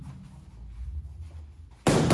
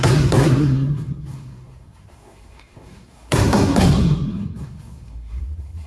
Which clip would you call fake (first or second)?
second